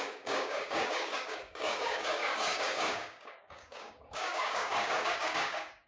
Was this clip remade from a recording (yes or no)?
yes